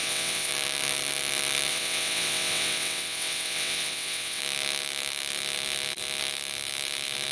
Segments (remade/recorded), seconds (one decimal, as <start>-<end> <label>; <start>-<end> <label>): 0.0-0.5 remade; 0.5-1.7 recorded; 1.7-4.4 remade; 4.4-7.3 recorded